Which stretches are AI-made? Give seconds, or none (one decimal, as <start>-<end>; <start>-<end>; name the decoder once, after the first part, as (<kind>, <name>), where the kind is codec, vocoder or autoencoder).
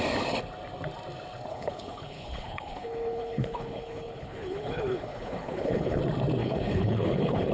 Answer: 1.5-6.0 (codec, HILCodec); 6.4-7.5